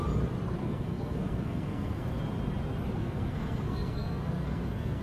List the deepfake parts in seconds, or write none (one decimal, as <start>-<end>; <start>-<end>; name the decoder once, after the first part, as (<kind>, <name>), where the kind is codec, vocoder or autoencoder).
0.6-2.2 (codec, SNAC); 2.9-5.0